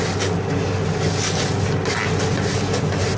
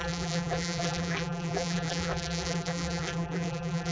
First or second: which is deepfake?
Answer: second